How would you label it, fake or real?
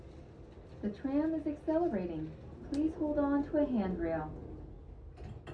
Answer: real